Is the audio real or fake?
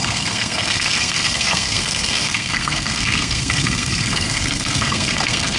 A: fake